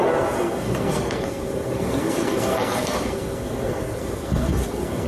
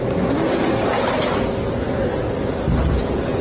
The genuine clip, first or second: second